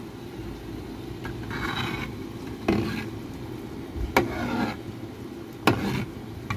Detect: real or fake real